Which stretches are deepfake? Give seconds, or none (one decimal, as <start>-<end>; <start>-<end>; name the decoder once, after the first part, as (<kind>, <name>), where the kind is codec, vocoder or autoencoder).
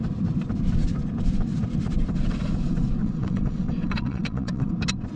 3.0-4.7 (vocoder, WaveNeXt)